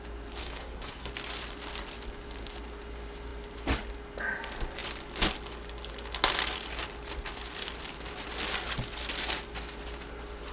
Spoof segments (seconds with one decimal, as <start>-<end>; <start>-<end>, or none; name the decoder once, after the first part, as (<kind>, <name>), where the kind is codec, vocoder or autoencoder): 0.4-1.1 (codec, SNAC)